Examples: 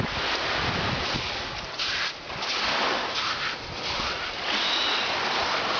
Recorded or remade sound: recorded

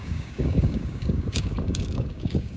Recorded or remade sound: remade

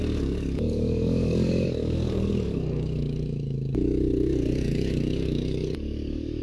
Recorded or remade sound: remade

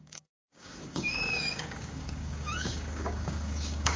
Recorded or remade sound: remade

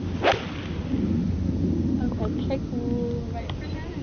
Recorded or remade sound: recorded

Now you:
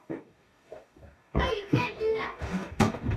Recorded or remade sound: remade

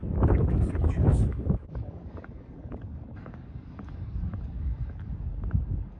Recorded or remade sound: remade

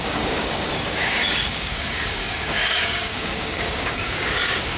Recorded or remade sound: remade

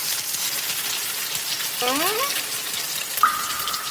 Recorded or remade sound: recorded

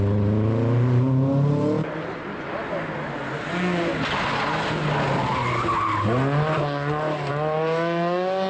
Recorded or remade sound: recorded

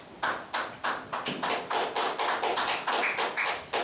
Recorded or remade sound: recorded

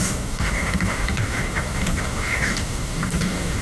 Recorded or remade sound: remade